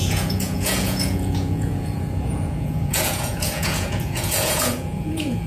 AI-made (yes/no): yes